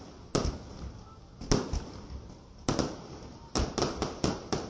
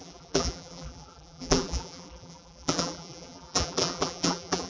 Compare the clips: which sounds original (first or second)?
first